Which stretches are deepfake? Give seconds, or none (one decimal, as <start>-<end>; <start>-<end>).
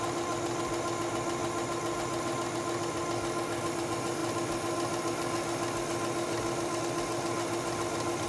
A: none